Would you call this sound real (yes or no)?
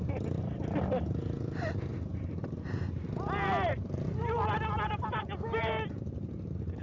yes